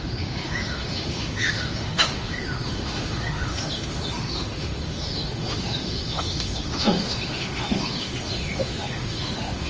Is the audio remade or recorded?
remade